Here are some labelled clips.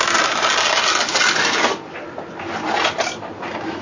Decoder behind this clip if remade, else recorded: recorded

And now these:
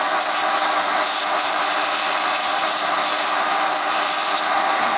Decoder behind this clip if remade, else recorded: remade, vocoder, BigVGAN v2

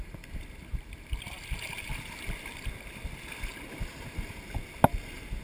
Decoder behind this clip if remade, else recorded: recorded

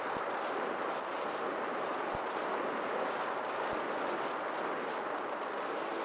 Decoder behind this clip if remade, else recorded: recorded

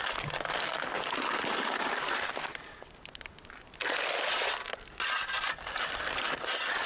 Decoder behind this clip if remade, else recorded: recorded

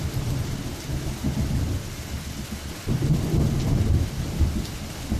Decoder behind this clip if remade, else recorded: recorded